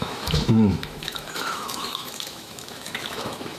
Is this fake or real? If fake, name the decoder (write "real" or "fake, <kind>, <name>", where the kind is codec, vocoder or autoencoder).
fake, autoencoder, DAC-VAE